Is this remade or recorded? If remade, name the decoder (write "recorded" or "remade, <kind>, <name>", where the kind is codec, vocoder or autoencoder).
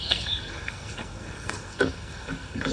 remade, codec, SNAC